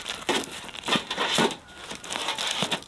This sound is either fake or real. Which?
real